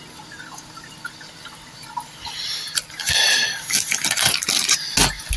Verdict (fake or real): real